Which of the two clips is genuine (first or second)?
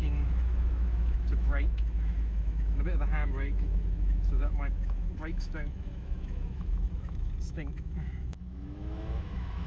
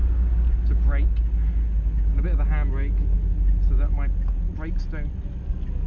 second